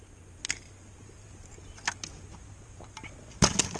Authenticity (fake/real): real